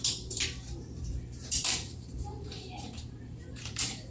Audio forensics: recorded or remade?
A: remade